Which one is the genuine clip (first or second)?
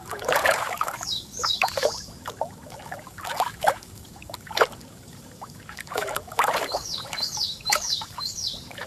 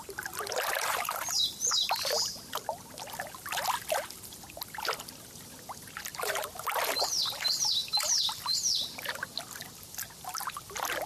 second